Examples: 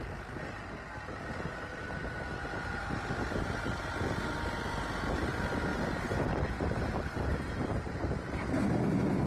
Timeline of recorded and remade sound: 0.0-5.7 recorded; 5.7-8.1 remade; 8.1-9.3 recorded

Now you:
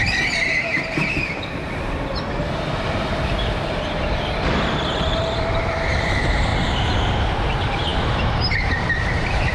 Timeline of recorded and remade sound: 0.0-0.7 remade; 0.7-4.6 recorded; 4.6-6.5 remade; 6.5-7.2 recorded; 7.2-9.5 remade

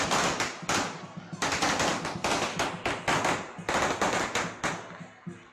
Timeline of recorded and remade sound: 0.0-5.5 recorded

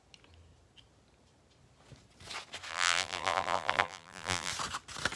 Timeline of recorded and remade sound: 0.0-2.7 recorded; 2.7-4.5 remade; 4.5-5.2 recorded

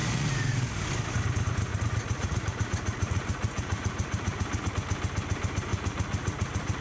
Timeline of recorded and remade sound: 0.0-0.6 remade; 0.6-1.7 recorded; 1.7-4.7 remade; 4.7-5.7 recorded; 5.7-6.8 remade

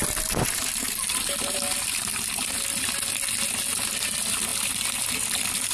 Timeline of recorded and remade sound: 0.0-5.7 recorded